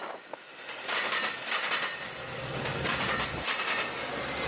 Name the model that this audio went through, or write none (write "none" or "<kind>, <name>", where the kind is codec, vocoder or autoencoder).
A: none